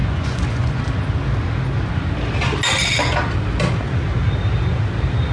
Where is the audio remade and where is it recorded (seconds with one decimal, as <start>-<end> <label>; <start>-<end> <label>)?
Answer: 0.0-0.8 remade; 0.8-5.3 recorded